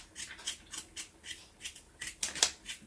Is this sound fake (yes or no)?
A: no